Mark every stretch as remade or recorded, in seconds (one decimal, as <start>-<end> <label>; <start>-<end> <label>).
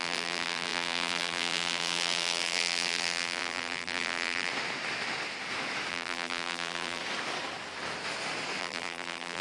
0.0-4.5 remade; 4.5-5.9 recorded; 5.9-7.0 remade; 7.0-8.6 recorded; 8.6-9.4 remade